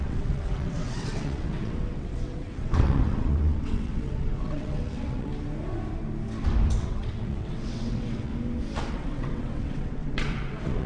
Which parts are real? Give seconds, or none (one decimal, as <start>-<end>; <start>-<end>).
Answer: 5.3-6.8; 8.3-8.9